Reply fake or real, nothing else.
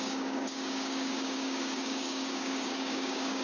fake